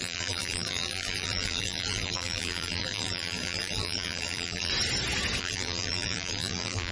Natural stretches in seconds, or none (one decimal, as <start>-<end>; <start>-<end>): 4.7-5.4